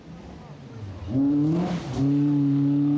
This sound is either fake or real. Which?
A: real